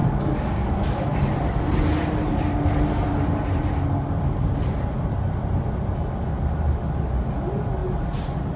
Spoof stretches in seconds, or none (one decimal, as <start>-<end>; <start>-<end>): 0.0-1.1